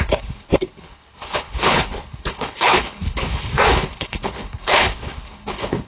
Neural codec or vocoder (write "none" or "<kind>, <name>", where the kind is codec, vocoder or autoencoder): codec, HILCodec